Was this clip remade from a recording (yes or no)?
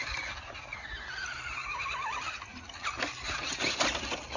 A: no